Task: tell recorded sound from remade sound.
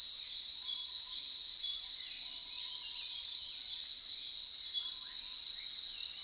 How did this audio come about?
recorded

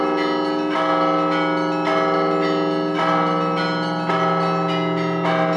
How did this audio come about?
recorded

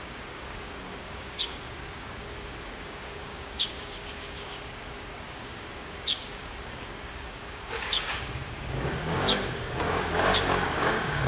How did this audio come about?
remade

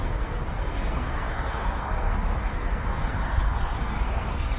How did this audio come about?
remade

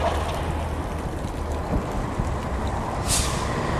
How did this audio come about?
recorded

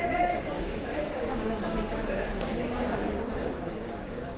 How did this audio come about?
remade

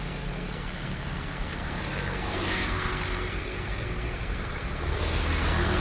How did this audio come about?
remade